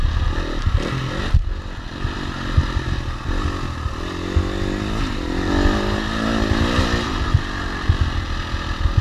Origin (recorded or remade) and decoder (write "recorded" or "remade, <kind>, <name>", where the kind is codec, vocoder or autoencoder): recorded